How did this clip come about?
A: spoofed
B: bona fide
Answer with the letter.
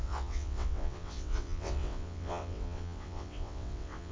A